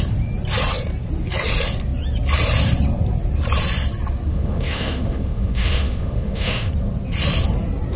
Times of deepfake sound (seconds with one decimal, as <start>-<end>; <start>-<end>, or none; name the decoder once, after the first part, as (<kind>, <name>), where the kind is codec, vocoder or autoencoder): 4.3-6.7 (autoencoder, DAC-VAE)